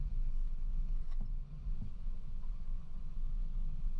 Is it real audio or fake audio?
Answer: fake